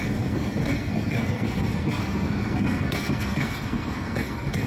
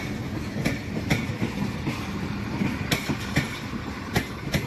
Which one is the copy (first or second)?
first